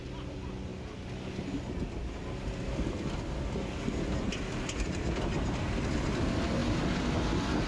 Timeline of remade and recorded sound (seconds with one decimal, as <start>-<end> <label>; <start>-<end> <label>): 0.0-7.7 recorded

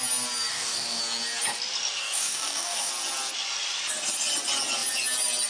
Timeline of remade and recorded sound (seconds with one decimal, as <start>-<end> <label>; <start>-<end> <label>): 0.0-0.5 recorded; 0.5-1.0 remade; 1.0-2.0 recorded; 2.0-2.9 remade; 2.9-5.5 recorded

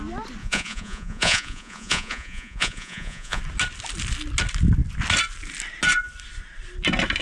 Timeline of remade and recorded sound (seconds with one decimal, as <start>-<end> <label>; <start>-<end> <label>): 0.0-0.4 recorded; 0.4-3.4 remade; 3.4-7.2 recorded

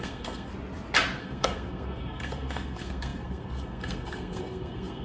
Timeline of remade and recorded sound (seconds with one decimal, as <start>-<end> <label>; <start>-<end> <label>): 0.0-0.5 remade; 0.5-1.2 recorded; 1.2-5.0 remade

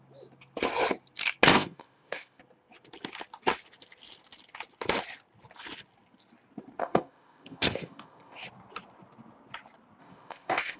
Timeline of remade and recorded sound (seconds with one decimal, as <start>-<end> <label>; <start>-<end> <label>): 0.0-1.5 recorded; 1.5-2.4 remade; 2.4-6.8 recorded; 6.8-8.4 remade; 8.4-10.0 recorded; 10.0-10.8 remade

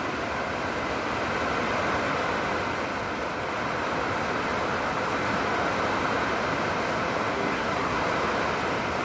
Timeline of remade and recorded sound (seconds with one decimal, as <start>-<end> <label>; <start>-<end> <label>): 0.0-7.3 recorded; 7.3-8.0 remade; 8.0-9.0 recorded

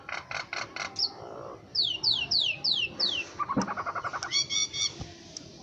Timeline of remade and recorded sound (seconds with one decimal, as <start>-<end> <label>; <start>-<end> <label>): 0.0-5.6 recorded